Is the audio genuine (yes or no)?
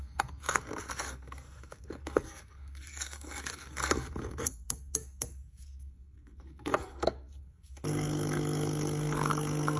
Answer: no